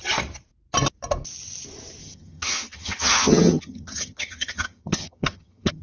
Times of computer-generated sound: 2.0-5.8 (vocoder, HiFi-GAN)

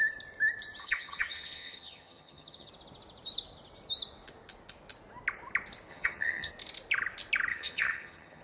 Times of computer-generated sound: 0.8-2.7 (vocoder, HiFi-GAN); 5.9-6.5; 7.5-8.4

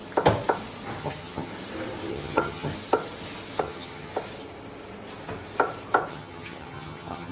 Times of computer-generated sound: 1.0-1.5 (vocoder, HiFi-GAN); 2.1-2.7; 3.6-4.1; 6.1-7.3

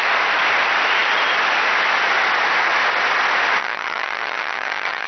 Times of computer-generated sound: 3.6-5.1 (vocoder, HiFi-GAN)

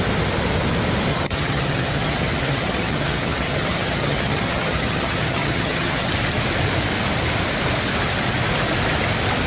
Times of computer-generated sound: 1.1-6.1 (vocoder, HiFi-GAN)

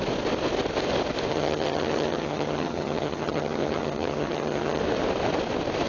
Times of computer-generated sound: 1.3-4.8 (vocoder, HiFi-GAN)

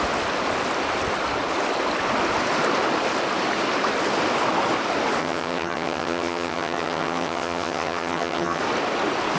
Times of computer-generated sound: 5.2-8.6 (vocoder, HiFi-GAN)

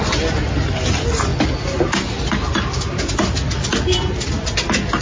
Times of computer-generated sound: none